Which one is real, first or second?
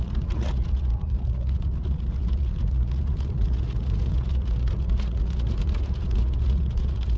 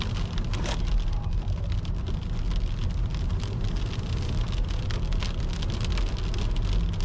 second